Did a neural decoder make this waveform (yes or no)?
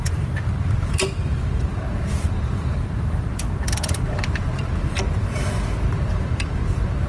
yes